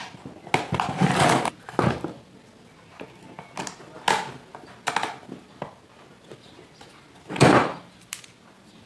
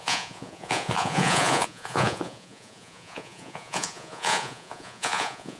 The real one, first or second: first